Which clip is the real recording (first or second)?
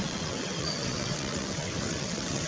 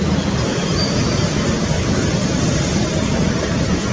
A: second